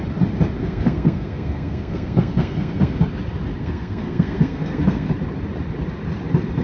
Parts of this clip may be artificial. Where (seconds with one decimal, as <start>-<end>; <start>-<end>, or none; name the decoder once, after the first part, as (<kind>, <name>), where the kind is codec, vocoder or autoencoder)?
0.6-3.0 (codec, SNAC); 3.6-5.1